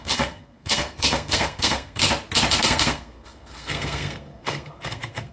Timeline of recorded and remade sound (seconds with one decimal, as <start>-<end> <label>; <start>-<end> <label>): 0.0-2.0 remade; 2.0-2.6 recorded; 2.6-5.3 remade